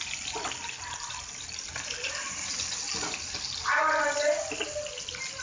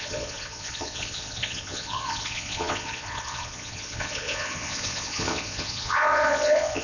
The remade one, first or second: second